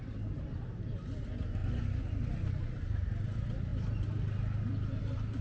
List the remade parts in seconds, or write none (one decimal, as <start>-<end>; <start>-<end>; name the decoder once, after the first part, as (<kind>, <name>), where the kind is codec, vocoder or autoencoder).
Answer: none